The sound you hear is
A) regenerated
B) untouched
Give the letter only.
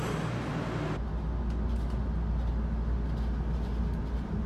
B